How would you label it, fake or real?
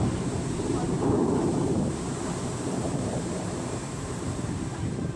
fake